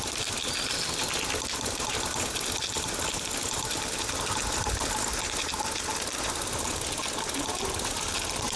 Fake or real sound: real